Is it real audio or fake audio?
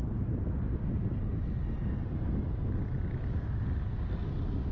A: real